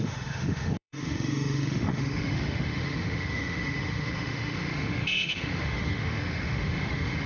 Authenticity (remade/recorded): remade